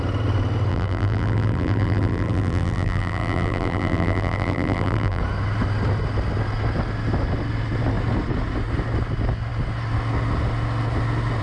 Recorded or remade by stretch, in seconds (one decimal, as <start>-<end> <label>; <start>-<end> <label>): 0.0-0.7 recorded; 0.7-5.2 remade; 5.2-11.4 recorded